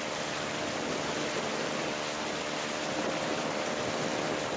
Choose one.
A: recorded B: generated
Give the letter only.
A